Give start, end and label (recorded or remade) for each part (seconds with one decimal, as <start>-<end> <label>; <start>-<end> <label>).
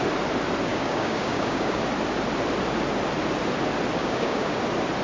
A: 0.0-0.7 recorded; 0.7-1.8 remade; 1.8-4.0 recorded; 4.0-4.6 remade; 4.6-5.0 recorded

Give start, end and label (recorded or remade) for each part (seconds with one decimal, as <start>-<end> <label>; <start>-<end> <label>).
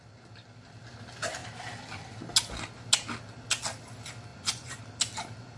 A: 0.0-4.3 recorded; 4.3-4.8 remade; 4.8-5.6 recorded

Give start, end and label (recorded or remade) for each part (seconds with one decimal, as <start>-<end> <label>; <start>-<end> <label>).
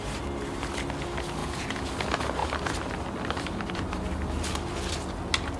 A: 0.0-1.4 recorded; 1.4-1.9 remade; 1.9-5.6 recorded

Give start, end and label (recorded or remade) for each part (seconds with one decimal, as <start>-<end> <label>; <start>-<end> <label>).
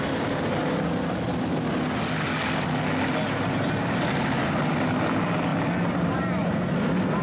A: 0.0-5.5 recorded; 5.5-6.6 remade; 6.6-7.2 recorded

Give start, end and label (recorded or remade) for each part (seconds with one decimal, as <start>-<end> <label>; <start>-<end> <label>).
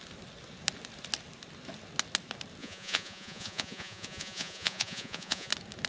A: 0.0-2.6 recorded; 2.6-5.5 remade; 5.5-5.9 recorded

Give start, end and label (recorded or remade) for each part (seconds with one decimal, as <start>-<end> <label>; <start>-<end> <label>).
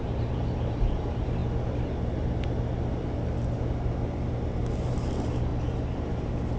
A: 0.0-1.4 remade; 1.4-4.7 recorded; 4.7-5.5 remade; 5.5-6.6 recorded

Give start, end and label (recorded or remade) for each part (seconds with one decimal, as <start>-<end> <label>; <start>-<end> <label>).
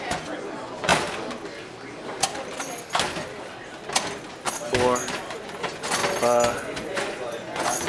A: 0.0-0.9 remade; 0.9-5.6 recorded; 5.6-6.0 remade; 6.0-6.5 recorded; 6.5-7.9 remade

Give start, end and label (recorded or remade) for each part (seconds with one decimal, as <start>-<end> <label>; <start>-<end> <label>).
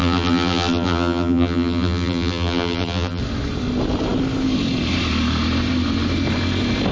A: 0.0-3.2 remade; 3.2-6.9 recorded